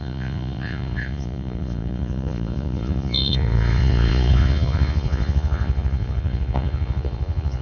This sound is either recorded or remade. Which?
remade